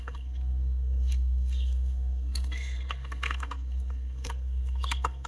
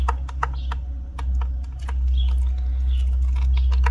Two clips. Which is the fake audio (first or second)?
first